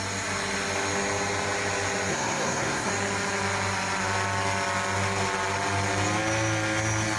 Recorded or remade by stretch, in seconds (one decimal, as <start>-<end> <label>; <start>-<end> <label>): 0.0-2.1 recorded; 2.1-2.9 remade; 2.9-7.2 recorded

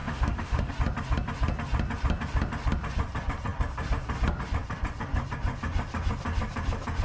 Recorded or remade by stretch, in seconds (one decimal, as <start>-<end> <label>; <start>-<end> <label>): 0.0-0.7 remade; 0.7-7.0 recorded

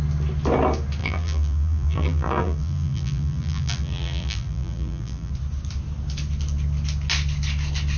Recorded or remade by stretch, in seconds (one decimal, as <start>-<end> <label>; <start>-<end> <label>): 0.0-1.0 recorded; 1.0-5.3 remade; 5.3-8.0 recorded

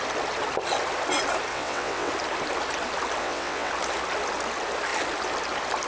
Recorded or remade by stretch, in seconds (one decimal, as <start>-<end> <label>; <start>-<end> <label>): 0.0-1.5 recorded; 1.5-2.1 remade; 2.1-3.2 recorded; 3.2-3.7 remade; 3.7-5.9 recorded

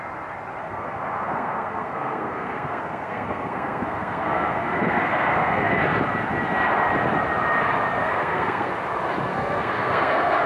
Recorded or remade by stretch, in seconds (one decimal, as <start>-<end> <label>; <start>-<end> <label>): 0.0-0.6 recorded; 0.6-5.8 remade; 5.8-8.0 recorded; 8.0-8.7 remade; 8.7-9.3 recorded; 9.3-10.5 remade

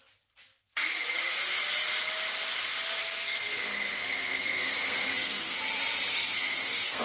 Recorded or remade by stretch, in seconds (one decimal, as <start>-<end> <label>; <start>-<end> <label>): 0.0-3.0 recorded; 3.0-5.5 remade; 5.5-6.1 recorded; 6.1-7.0 remade

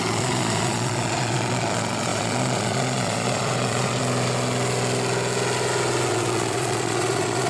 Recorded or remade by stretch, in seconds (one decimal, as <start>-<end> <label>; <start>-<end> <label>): 0.0-4.0 remade; 4.0-6.1 recorded; 6.1-7.5 remade